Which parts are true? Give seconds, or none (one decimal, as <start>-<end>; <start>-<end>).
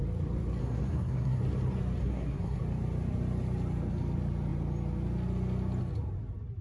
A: 0.0-0.6; 1.4-2.0; 2.6-6.6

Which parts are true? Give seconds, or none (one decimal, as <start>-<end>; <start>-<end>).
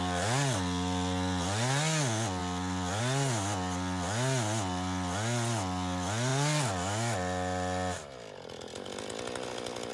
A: 0.0-9.9